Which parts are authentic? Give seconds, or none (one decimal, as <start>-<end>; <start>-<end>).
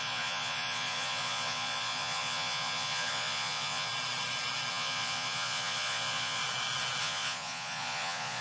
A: 3.9-4.7; 6.4-7.0